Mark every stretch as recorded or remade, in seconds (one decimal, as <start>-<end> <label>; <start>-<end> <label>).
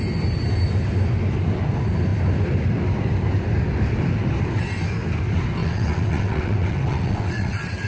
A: 0.0-5.6 recorded; 5.6-7.9 remade